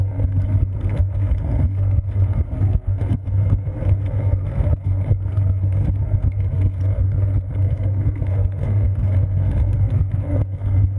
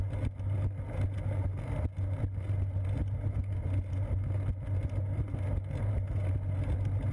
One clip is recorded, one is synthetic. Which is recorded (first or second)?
second